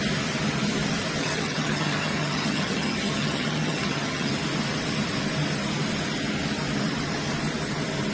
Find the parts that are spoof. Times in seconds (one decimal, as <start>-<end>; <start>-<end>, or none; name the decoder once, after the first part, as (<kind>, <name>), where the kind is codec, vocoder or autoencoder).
1.2-4.3 (vocoder, HiFi-GAN)